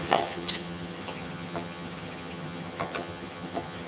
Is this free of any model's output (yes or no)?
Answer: no